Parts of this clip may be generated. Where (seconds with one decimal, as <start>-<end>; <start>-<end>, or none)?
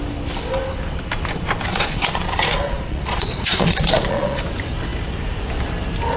1.7-4.4